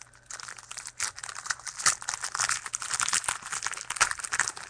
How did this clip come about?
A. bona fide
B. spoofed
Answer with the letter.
A